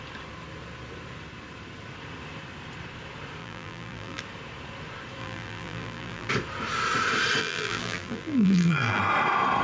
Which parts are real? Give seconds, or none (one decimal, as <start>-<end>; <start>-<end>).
0.0-3.4; 4.2-5.2; 6.3-7.4; 9.0-9.6